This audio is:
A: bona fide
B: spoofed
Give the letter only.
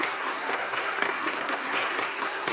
B